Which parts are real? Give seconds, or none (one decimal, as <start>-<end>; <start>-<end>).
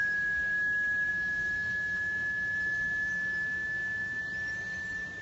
0.0-1.1; 4.2-5.2